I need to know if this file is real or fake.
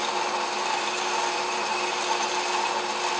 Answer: real